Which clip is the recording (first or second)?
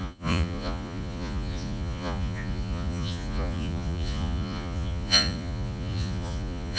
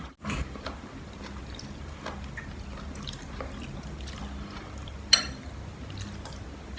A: second